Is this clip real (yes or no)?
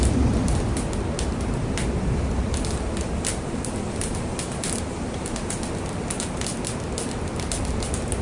yes